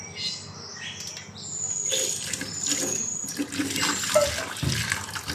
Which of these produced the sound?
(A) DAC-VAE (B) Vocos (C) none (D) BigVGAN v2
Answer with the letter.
C